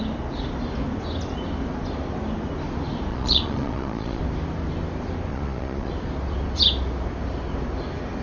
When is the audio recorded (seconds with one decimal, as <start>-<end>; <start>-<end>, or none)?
0.0-3.1; 4.2-5.3; 5.9-8.2